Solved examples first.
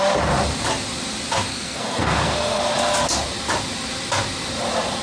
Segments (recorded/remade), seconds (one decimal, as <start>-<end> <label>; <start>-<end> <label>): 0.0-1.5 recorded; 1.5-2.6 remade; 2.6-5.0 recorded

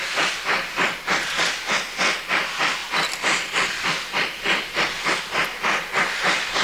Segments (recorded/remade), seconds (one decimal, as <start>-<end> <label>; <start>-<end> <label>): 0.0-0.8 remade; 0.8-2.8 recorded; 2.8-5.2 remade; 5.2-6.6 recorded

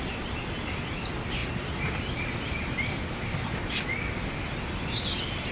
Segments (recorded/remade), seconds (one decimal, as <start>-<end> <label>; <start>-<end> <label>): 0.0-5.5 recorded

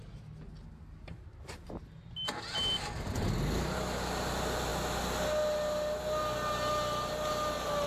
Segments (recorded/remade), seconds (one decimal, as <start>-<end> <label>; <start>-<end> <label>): 0.0-7.9 recorded